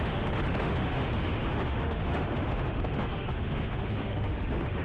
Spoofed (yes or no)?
yes